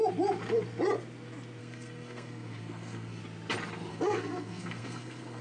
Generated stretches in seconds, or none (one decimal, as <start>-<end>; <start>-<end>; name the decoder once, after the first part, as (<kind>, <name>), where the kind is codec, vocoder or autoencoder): 1.6-3.2 (codec, SNAC); 3.9-5.4